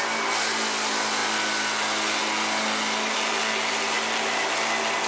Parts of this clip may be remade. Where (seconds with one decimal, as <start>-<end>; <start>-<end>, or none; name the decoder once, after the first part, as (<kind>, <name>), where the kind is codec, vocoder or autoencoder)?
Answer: none